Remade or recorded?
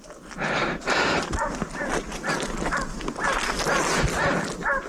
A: recorded